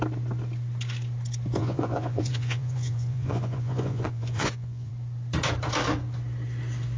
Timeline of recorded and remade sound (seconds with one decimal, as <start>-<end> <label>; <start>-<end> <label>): 0.0-1.6 recorded; 1.6-4.9 remade; 4.9-7.0 recorded